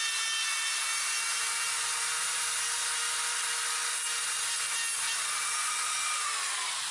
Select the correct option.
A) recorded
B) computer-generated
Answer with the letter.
A